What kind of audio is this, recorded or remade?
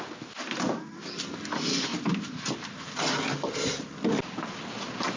recorded